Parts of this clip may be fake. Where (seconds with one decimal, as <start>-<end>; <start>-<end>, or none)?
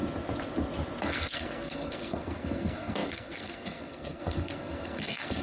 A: 1.0-5.4